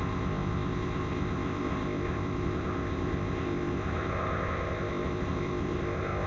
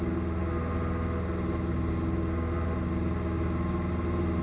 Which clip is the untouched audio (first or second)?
second